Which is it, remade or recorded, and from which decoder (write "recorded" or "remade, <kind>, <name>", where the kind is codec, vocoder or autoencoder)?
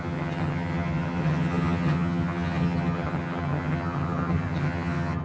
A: remade, vocoder, HiFi-GAN